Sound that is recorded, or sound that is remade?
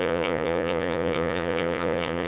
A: remade